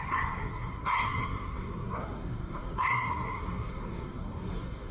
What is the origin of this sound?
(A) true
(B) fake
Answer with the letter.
B